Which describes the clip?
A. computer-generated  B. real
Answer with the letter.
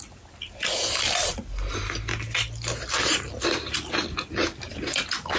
B